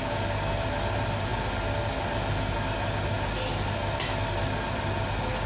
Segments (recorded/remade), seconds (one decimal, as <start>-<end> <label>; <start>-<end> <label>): 0.0-5.5 recorded